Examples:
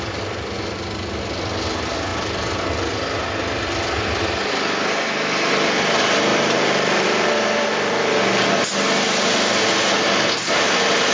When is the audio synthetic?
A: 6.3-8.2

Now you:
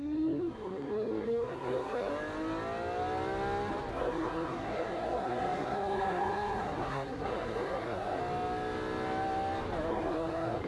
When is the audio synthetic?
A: 0.0-2.1; 3.9-8.2; 9.9-10.7

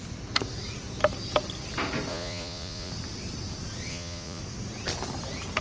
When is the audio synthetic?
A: 2.1-2.9; 3.9-4.4

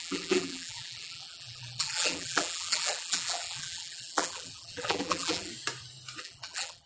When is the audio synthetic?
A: 0.0-5.5; 6.2-6.9

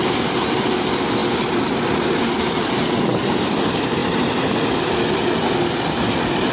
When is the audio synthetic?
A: none

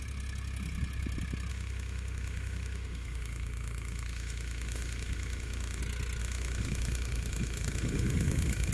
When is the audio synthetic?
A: 1.5-5.8; 6.2-8.7

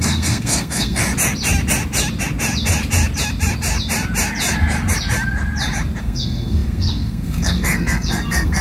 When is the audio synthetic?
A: 0.0-1.0; 6.0-8.6